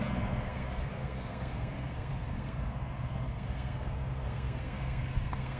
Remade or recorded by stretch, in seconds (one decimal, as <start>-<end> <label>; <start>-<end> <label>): 0.0-5.6 remade